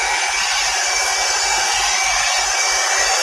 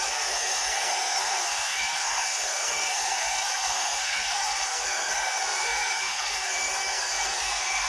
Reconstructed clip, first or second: second